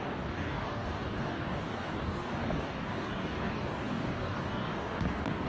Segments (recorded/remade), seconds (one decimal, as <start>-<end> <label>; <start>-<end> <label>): 0.0-5.5 remade